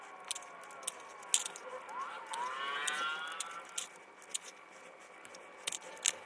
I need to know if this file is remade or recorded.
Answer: recorded